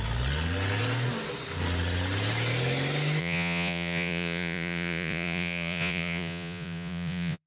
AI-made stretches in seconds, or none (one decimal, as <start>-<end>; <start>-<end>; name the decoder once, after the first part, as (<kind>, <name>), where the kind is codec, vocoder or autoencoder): 3.2-7.5 (vocoder, Vocos)